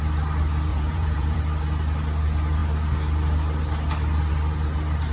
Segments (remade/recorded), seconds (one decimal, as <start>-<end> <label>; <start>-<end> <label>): 0.0-0.7 recorded; 0.7-1.4 remade; 1.4-5.1 recorded